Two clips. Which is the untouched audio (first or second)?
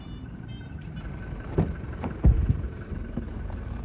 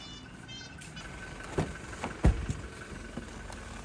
second